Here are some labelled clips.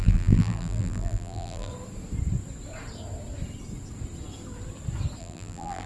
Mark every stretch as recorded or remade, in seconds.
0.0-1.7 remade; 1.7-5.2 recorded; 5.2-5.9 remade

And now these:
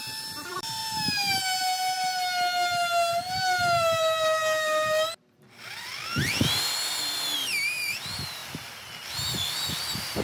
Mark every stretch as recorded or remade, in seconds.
0.0-0.8 remade; 0.8-5.3 recorded; 5.3-10.2 remade

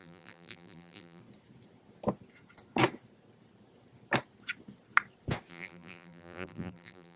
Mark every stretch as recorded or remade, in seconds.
0.0-1.2 remade; 1.2-5.5 recorded; 5.5-7.2 remade

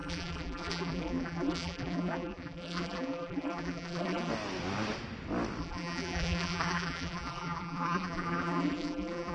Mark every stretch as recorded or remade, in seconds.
0.0-4.3 remade; 4.3-5.6 recorded; 5.6-9.3 remade

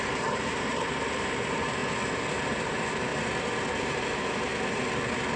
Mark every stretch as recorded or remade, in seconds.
0.0-1.8 remade; 1.8-2.3 recorded; 2.3-3.1 remade; 3.1-3.8 recorded; 3.8-4.5 remade; 4.5-5.4 recorded

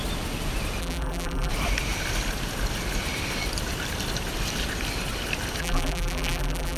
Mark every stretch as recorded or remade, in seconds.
0.0-0.8 recorded; 0.8-1.5 remade; 1.5-5.6 recorded; 5.6-6.8 remade